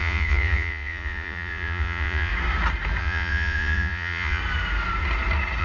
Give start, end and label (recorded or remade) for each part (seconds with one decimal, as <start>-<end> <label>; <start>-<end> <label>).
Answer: 0.0-2.3 remade; 2.3-3.0 recorded; 3.0-4.4 remade; 4.4-5.6 recorded